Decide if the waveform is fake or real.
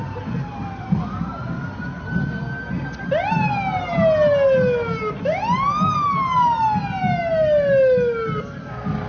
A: real